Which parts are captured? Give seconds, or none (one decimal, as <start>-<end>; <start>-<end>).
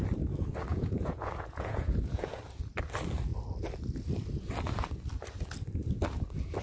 0.0-0.7; 2.4-6.6